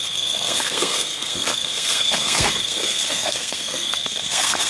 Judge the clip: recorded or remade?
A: remade